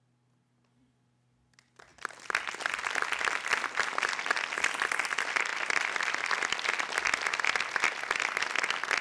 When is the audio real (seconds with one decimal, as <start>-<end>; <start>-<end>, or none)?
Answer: 0.0-9.0